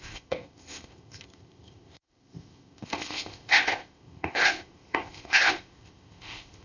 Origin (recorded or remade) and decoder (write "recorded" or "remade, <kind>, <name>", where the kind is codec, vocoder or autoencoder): remade, codec, ZipCodec